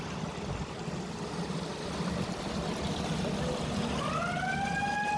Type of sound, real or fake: real